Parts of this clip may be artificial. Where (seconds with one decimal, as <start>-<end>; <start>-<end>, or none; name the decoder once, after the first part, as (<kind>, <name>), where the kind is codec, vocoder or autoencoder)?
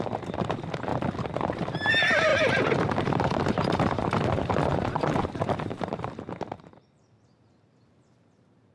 0.0-0.9 (vocoder, BigVGAN v2); 1.9-8.7